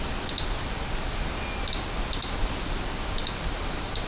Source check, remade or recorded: recorded